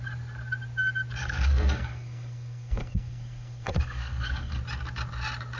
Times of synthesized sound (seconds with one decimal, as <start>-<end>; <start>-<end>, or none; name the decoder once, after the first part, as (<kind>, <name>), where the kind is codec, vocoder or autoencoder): 1.2-4.6 (codec, SNAC)